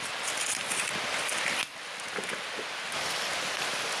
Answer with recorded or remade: recorded